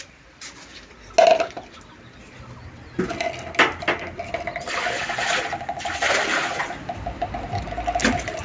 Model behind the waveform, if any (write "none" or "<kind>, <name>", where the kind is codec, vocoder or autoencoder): none